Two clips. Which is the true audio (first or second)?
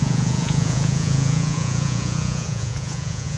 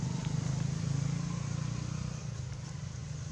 second